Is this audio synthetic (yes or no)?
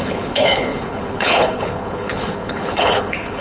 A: yes